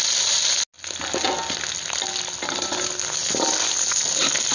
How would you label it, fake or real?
real